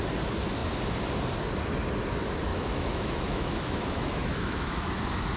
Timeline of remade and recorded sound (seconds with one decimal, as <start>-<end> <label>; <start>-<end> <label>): 0.0-2.5 recorded; 2.5-4.9 remade; 4.9-5.4 recorded